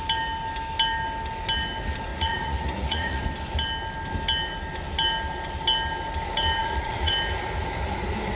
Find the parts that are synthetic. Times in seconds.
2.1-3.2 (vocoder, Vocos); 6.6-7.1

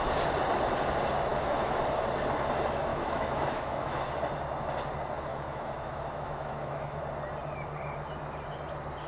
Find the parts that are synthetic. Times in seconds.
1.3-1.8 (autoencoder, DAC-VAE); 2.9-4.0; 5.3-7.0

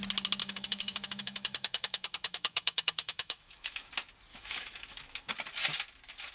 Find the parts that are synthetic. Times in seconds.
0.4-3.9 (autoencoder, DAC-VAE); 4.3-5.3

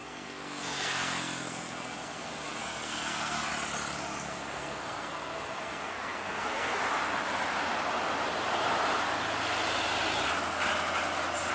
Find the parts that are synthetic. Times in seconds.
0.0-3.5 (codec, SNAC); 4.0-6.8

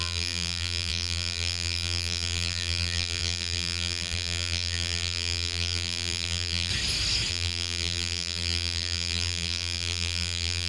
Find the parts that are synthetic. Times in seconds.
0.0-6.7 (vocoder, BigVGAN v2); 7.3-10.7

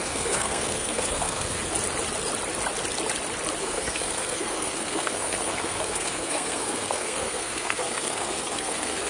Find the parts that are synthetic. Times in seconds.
0.0-1.6 (codec, SNAC); 3.6-9.1

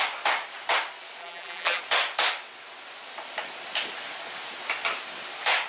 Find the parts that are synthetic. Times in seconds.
1.2-1.8 (vocoder, BigVGAN v2)

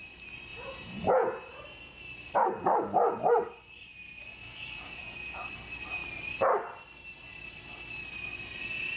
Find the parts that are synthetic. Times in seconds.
0.5-2.0 (vocoder, Vocos); 4.3-5.4